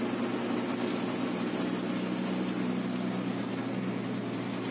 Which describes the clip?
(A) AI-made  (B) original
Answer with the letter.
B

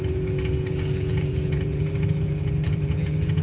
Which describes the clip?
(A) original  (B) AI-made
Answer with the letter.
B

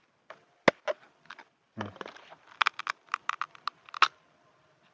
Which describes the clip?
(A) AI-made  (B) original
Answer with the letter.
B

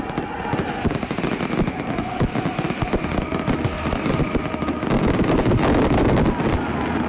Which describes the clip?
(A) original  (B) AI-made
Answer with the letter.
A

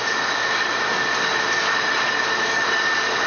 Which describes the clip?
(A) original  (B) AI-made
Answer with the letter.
A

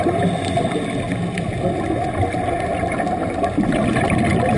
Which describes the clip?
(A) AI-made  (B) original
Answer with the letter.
B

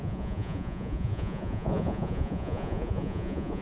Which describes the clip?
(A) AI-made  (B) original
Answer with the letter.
A